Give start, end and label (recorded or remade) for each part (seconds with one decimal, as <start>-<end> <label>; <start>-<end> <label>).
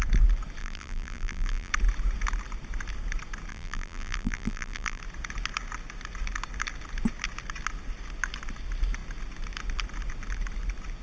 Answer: 0.0-0.6 recorded; 0.6-1.7 remade; 1.7-3.5 recorded; 3.5-5.0 remade; 5.0-11.0 recorded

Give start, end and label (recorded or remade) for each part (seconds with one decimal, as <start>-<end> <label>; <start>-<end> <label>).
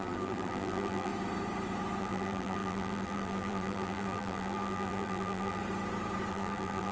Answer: 0.0-1.1 remade; 1.1-2.0 recorded; 2.0-5.6 remade; 5.6-6.3 recorded; 6.3-6.9 remade